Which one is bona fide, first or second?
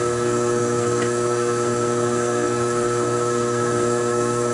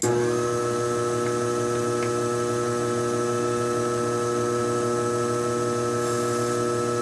second